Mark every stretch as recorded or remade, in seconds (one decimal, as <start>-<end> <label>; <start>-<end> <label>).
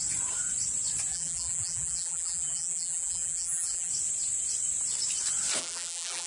0.0-1.1 recorded; 1.1-3.9 remade; 3.9-5.6 recorded; 5.6-6.3 remade